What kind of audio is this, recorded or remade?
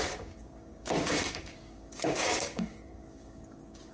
remade